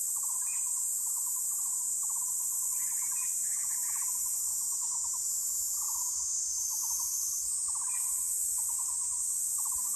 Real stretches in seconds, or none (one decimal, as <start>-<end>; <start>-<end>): 0.8-2.2; 4.5-6.9